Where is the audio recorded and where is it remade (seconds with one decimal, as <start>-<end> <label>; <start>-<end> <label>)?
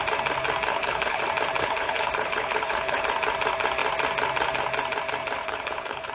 0.0-0.7 recorded; 0.7-1.2 remade; 1.2-1.6 recorded; 1.6-3.0 remade; 3.0-5.4 recorded; 5.4-6.1 remade